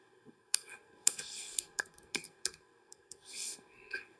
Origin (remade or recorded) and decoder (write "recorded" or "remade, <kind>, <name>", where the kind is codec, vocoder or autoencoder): remade, codec, SNAC